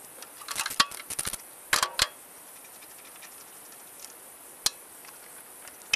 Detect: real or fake real